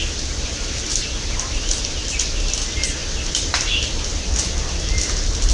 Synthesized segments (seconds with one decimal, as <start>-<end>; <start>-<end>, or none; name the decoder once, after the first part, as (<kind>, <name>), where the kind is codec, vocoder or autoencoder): none